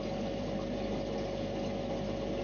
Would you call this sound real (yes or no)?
yes